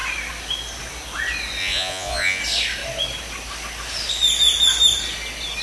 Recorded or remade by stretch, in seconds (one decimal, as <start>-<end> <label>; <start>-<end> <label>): 0.0-1.6 recorded; 1.6-2.4 remade; 2.4-5.6 recorded

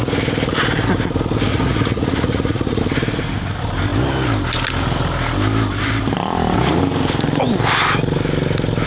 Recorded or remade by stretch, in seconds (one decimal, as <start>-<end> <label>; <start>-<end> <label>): 0.0-1.5 recorded; 1.5-2.8 remade; 2.8-8.9 recorded